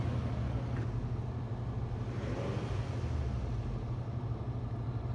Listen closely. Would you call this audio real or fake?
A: real